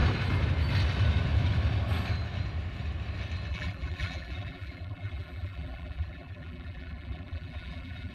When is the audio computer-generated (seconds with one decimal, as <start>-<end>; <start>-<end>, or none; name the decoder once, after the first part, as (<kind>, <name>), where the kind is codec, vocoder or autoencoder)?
3.5-8.1 (vocoder, BigVGAN v2)